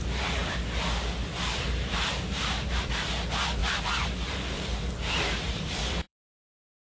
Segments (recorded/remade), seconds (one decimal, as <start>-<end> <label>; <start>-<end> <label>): 0.0-0.4 remade; 0.4-1.6 recorded; 1.6-6.9 remade